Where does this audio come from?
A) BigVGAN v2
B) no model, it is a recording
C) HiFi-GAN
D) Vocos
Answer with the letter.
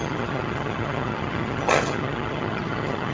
C